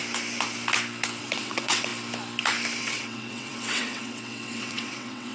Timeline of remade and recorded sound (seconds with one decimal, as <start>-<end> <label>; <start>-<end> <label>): 0.0-1.2 recorded; 1.2-1.9 remade; 1.9-2.8 recorded; 2.8-5.3 remade